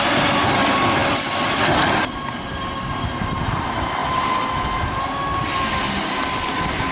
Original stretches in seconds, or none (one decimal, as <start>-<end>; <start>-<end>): 0.0-6.9